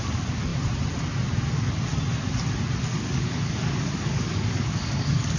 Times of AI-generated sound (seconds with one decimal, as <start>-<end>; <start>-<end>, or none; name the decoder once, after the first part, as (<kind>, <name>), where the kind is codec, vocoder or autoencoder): 2.9-5.4 (codec, DAC)